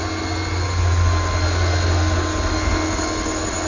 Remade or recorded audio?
recorded